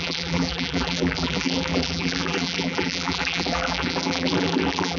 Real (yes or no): no